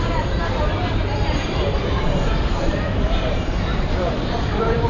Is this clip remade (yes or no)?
yes